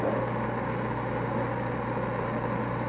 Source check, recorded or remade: recorded